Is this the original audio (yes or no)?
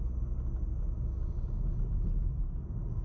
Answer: yes